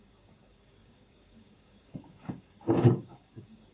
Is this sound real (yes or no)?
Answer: no